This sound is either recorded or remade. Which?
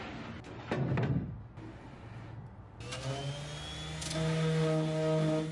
recorded